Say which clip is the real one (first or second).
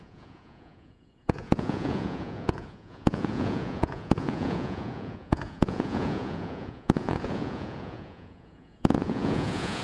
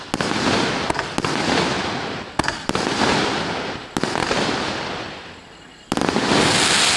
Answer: second